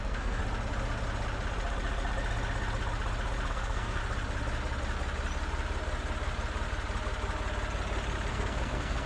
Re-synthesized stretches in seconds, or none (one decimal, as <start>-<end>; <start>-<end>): 0.0-0.4; 3.5-4.0; 8.3-9.1